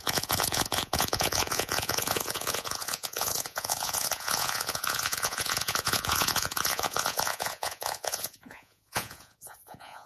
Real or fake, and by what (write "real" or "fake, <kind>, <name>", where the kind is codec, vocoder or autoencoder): fake, vocoder, Vocos